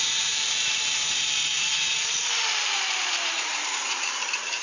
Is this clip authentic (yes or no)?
no